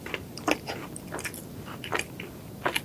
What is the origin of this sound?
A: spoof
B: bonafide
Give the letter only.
A